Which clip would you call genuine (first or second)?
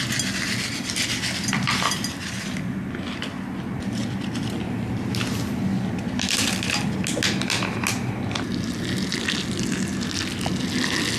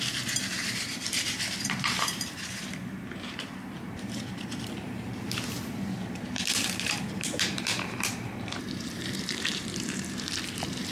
first